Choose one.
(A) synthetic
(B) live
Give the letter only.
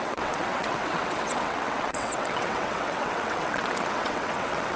A